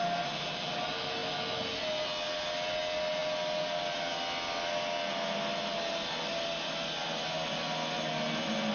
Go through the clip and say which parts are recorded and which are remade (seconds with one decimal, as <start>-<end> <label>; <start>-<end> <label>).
0.0-8.7 recorded